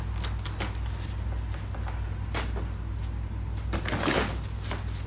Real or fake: real